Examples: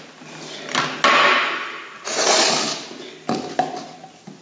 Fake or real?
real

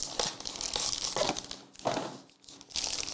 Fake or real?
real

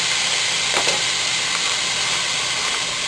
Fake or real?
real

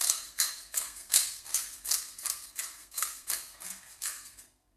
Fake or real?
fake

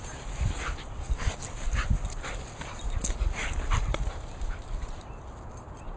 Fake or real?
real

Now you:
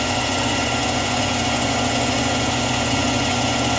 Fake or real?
fake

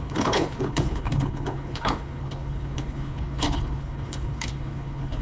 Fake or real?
fake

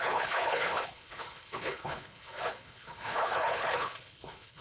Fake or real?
fake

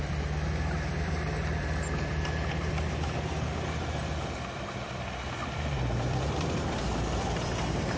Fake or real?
fake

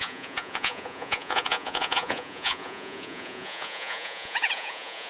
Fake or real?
fake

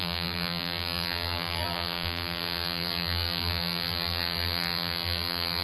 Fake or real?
fake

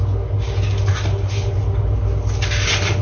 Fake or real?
real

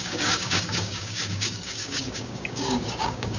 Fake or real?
fake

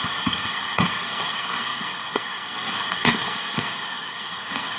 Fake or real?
fake